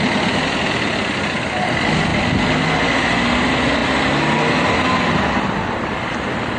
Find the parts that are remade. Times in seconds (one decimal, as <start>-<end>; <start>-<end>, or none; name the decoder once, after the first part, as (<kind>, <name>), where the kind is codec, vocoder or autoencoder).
none